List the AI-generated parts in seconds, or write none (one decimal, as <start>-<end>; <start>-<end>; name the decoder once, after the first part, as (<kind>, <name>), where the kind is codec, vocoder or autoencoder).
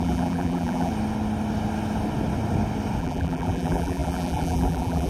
0.0-0.9 (vocoder, BigVGAN v2); 3.0-5.1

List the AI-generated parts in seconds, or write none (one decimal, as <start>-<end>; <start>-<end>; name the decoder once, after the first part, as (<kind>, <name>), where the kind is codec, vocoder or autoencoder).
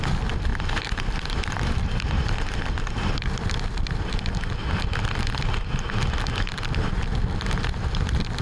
0.5-3.1 (vocoder, BigVGAN v2)